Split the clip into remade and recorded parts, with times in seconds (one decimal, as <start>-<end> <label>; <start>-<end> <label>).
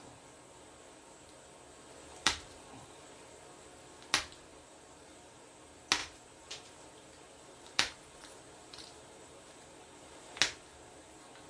0.0-2.1 recorded; 2.1-3.2 remade; 3.2-4.5 recorded; 4.5-5.5 remade; 5.5-6.0 recorded; 6.0-10.4 remade; 10.4-11.5 recorded